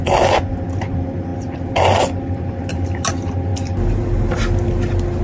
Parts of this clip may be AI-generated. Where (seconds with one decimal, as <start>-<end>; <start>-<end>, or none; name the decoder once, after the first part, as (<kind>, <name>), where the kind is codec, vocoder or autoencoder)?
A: none